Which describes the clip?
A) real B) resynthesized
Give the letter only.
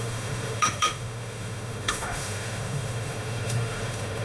B